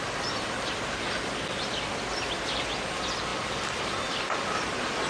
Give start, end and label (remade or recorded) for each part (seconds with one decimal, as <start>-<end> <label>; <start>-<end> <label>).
0.0-5.1 recorded